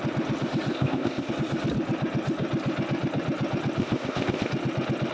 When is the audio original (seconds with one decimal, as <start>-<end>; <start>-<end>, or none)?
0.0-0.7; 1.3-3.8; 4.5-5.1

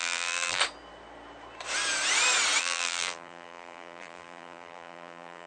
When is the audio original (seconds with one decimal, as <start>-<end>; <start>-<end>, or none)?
0.6-2.6

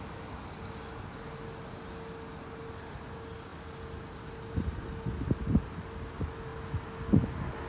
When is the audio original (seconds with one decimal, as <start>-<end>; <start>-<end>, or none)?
0.0-7.7